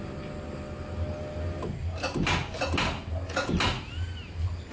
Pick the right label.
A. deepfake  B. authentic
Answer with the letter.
B